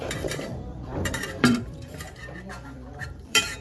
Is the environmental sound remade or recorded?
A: remade